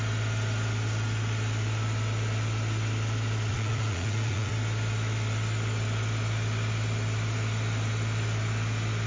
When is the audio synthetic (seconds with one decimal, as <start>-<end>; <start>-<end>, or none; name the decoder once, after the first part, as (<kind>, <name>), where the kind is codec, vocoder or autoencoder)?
3.5-4.5 (vocoder, Vocos)